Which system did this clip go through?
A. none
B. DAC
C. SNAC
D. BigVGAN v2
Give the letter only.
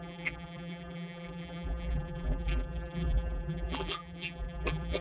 D